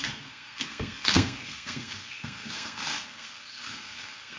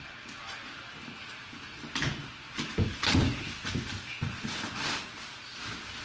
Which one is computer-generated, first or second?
first